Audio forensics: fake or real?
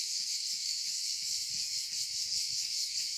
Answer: fake